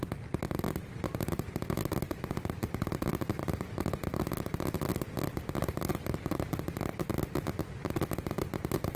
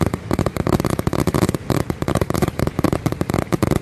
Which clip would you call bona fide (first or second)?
first